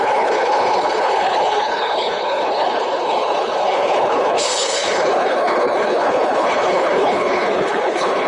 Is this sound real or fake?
fake